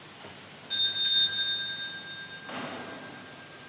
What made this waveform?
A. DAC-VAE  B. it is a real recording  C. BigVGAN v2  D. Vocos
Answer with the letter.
B